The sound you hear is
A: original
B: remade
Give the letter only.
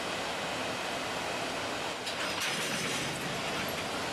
A